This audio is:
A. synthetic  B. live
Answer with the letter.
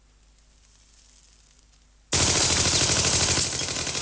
B